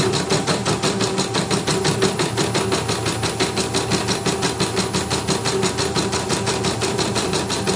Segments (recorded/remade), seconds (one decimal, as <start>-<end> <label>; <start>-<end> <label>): 0.0-0.6 remade; 0.6-1.5 recorded; 1.5-2.3 remade; 2.3-5.7 recorded; 5.7-7.8 remade